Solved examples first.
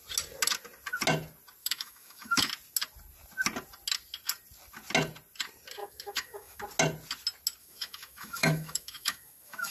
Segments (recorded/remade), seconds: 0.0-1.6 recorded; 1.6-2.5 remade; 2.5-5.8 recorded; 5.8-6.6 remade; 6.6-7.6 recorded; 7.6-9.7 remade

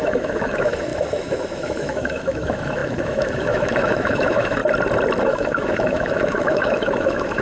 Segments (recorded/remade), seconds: 0.0-4.6 remade; 4.6-5.2 recorded; 5.2-7.4 remade

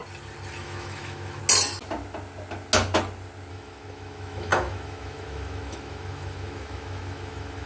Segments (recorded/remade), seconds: 0.0-0.6 recorded; 0.6-1.4 remade; 1.4-3.5 recorded; 3.5-7.7 remade

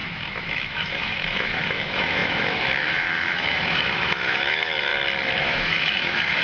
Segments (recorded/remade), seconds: 0.0-4.9 remade; 4.9-5.4 recorded; 5.4-6.4 remade

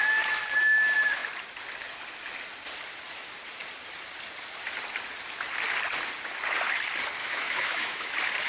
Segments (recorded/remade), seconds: 0.0-7.2 recorded; 7.2-8.1 remade; 8.1-8.5 recorded